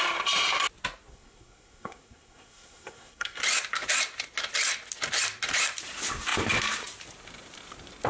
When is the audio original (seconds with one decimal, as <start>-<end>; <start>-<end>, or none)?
0.0-1.1; 3.4-8.1